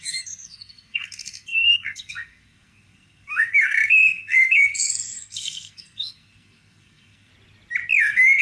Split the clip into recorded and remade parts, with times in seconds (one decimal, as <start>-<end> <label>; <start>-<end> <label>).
0.0-7.3 remade; 7.3-8.0 recorded; 8.0-8.4 remade